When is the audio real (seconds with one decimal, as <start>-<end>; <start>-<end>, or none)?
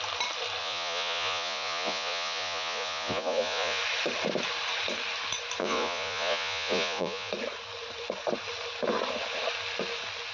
0.0-0.6; 3.8-5.6; 7.3-10.3